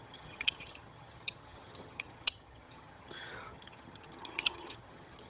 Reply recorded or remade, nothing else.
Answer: remade